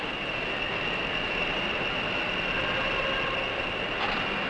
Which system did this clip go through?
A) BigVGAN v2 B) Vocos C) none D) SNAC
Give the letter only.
C